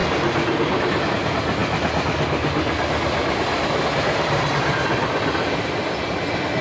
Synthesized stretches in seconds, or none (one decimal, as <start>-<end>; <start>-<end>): none